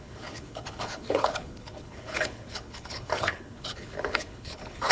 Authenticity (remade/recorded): remade